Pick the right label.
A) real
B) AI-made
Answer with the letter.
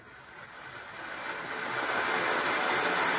A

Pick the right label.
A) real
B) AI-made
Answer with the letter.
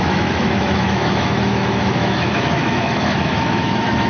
B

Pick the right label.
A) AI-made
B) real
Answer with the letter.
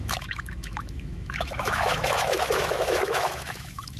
A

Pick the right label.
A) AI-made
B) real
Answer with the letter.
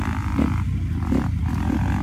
B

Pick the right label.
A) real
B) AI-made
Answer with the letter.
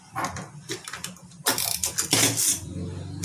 A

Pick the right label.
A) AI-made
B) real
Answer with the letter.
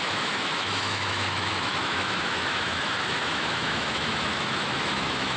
A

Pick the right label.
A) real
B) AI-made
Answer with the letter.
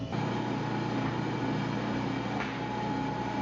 A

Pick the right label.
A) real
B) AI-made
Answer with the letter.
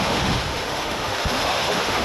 B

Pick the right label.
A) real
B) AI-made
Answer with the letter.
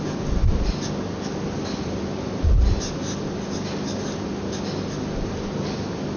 A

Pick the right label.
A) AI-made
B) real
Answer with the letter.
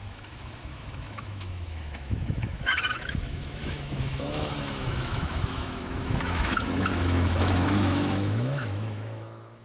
A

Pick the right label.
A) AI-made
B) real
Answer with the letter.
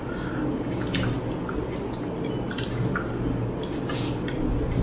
B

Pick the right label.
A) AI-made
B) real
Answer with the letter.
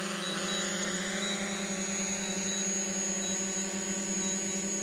B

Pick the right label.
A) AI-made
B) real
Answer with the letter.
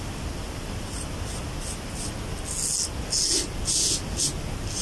B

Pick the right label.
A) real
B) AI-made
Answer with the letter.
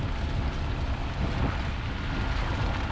A